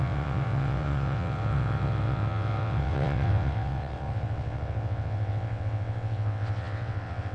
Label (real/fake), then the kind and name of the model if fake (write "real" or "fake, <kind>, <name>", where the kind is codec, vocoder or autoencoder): fake, vocoder, WaveNeXt